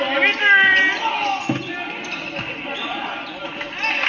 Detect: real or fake real